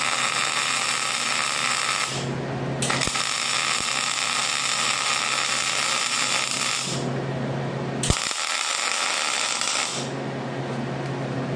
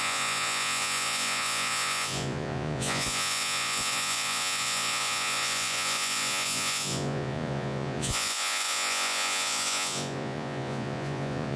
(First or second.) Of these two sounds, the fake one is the second